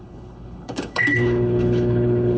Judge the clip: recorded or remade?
remade